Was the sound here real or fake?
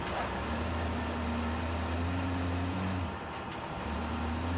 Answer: real